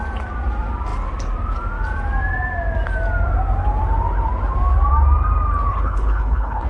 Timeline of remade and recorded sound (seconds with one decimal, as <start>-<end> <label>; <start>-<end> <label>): 0.0-5.7 recorded; 5.7-6.7 remade